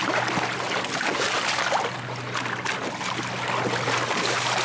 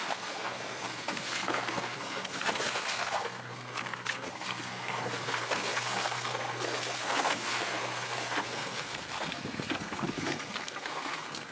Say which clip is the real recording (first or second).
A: first